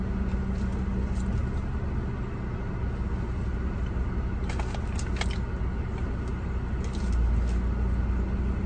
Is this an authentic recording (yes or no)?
yes